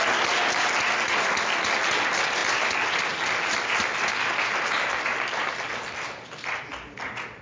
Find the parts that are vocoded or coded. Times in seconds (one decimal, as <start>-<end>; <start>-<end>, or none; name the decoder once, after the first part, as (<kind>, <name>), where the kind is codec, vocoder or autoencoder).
none